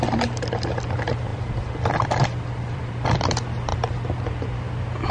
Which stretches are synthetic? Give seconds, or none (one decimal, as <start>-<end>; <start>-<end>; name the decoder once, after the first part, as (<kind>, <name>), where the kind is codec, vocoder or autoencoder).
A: 1.3-2.9 (vocoder, BigVGAN v2); 3.7-4.4